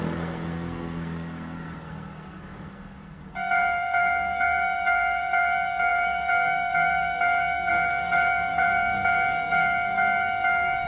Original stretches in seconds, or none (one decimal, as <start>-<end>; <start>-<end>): none